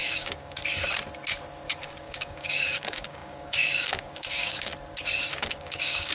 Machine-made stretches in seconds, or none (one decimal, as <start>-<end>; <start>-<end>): 0.0-0.6; 1.8-4.7; 5.3-6.1

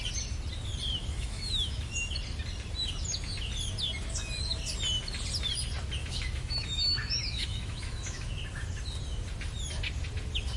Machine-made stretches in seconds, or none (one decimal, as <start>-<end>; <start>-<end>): 1.0-2.0; 6.0-8.3